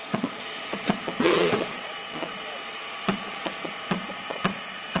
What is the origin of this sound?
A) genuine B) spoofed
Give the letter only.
B